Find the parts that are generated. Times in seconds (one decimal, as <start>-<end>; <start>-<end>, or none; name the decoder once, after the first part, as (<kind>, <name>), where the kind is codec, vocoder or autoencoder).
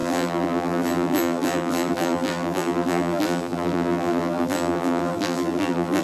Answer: 0.0-6.0 (vocoder, BigVGAN v2)